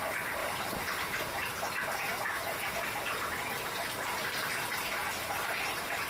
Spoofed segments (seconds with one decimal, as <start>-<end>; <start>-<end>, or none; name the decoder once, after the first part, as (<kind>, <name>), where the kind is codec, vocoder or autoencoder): 0.4-1.6 (vocoder, BigVGAN v2); 5.0-6.1